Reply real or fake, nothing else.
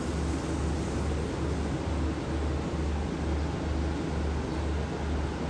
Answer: real